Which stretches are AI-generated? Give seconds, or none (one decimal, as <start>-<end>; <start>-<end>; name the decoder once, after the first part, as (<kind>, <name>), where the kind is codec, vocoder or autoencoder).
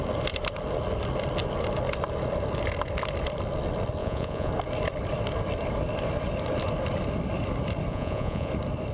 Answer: 4.0-4.5 (vocoder, Vocos); 7.9-8.5